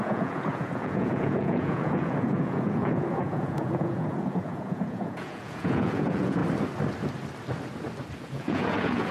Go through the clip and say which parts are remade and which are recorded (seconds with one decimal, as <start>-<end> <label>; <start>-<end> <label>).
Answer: 0.0-6.4 remade; 6.4-8.2 recorded; 8.2-9.1 remade